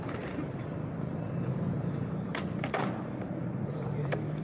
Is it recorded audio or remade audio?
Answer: remade